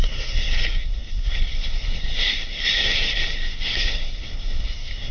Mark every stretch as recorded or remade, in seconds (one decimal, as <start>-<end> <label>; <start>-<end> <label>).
0.0-5.1 remade